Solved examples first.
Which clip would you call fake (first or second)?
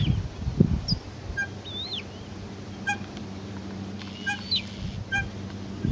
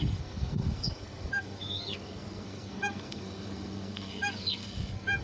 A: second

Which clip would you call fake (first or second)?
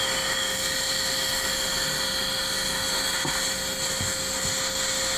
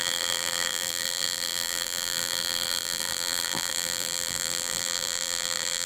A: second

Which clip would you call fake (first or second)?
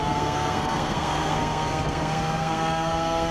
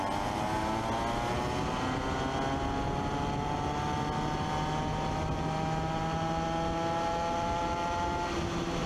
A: first